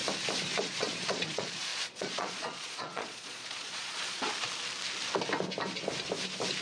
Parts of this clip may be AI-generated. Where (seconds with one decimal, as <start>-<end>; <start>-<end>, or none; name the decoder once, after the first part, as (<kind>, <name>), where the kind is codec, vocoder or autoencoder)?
0.6-4.2 (vocoder, Vocos)